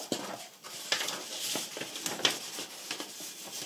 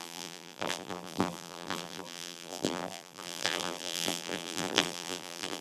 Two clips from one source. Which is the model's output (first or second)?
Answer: second